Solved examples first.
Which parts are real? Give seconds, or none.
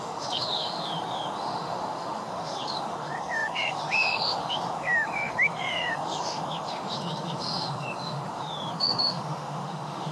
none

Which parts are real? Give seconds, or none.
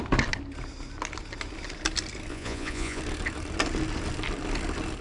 0.0-2.3; 3.0-5.0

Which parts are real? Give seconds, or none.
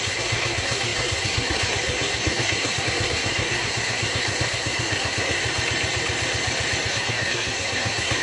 5.4-6.9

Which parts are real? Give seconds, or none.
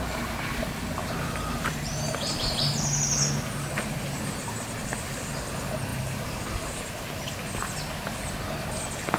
0.0-1.0; 2.8-5.9; 6.8-9.2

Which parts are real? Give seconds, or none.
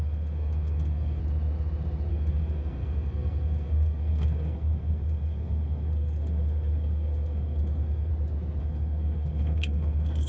1.2-2.1; 8.1-8.6